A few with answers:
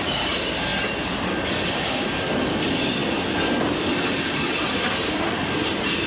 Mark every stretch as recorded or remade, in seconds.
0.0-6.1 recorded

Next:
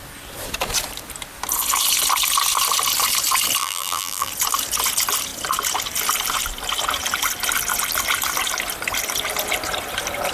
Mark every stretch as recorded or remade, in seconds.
0.0-3.6 recorded; 3.6-4.3 remade; 4.3-10.3 recorded

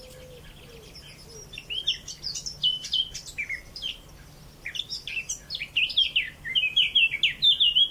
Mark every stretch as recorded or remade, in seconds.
0.0-6.5 recorded; 6.5-7.2 remade; 7.2-7.9 recorded

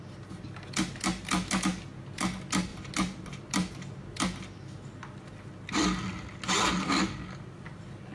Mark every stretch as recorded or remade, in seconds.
0.0-8.1 recorded

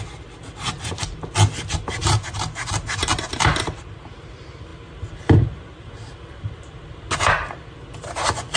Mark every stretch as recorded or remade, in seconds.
0.0-2.0 recorded; 2.0-2.8 remade; 2.8-8.6 recorded